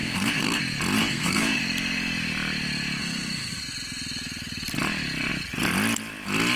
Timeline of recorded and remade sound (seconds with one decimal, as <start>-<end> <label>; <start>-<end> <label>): 0.0-0.6 remade; 0.6-1.0 recorded; 1.0-1.6 remade; 1.6-3.0 recorded; 3.0-3.6 remade; 3.6-6.6 recorded